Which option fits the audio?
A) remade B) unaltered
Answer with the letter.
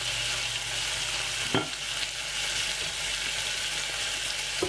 B